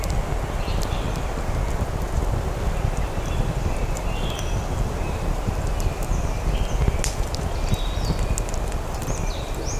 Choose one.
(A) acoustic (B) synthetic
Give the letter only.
A